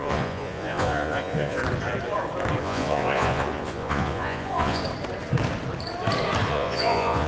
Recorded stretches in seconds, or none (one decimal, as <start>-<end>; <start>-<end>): 1.6-2.6; 4.8-6.5